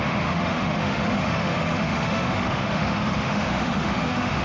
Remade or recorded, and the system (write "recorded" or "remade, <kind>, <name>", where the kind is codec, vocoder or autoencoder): remade, autoencoder, DAC-VAE